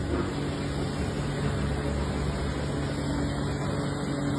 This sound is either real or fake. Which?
real